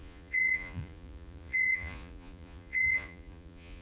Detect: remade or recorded remade